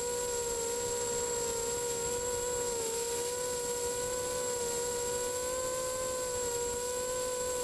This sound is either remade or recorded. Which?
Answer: recorded